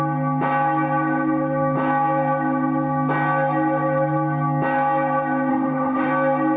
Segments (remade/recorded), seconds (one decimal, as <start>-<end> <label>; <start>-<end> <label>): 0.0-5.5 recorded; 5.5-6.1 remade; 6.1-6.6 recorded